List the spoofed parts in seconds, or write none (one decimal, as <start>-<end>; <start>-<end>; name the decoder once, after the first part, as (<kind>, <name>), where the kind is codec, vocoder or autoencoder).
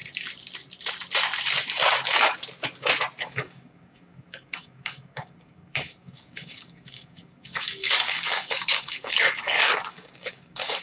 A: 3.2-10.8 (codec, DAC)